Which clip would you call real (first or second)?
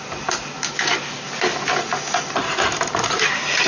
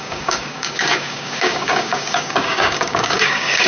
first